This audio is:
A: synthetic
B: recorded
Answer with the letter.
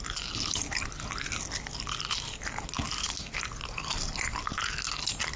B